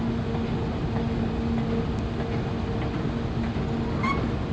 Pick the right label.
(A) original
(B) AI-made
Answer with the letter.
A